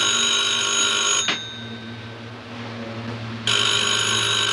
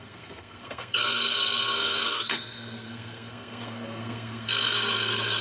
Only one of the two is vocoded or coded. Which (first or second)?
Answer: second